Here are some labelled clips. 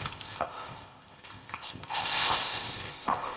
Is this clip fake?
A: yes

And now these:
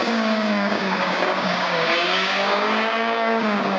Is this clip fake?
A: yes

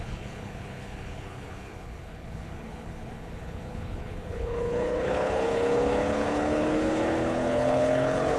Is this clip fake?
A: yes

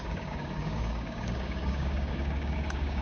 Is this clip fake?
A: yes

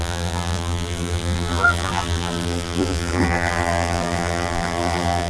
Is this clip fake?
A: yes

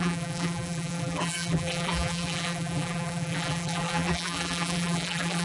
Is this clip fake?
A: yes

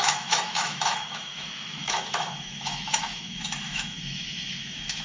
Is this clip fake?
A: yes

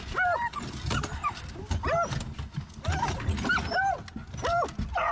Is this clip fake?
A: no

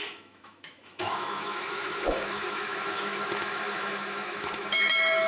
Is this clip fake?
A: yes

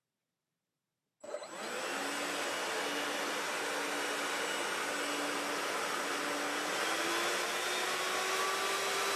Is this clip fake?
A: no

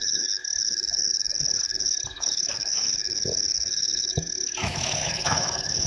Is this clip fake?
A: yes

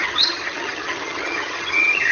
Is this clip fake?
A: yes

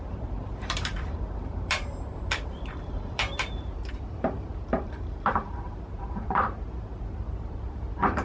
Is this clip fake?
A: yes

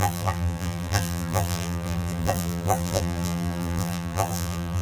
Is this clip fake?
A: yes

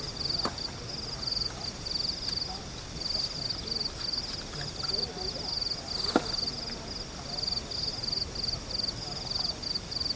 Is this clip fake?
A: no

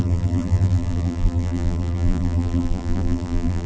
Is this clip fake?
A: yes